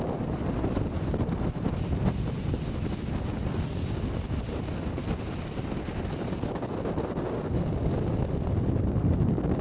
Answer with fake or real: real